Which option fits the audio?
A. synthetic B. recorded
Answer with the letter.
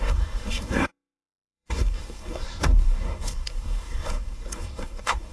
A